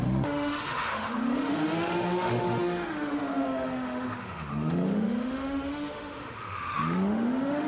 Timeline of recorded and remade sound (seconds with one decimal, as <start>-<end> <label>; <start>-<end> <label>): 0.0-7.7 remade